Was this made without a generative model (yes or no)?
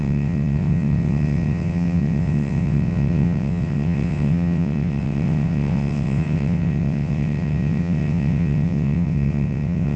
no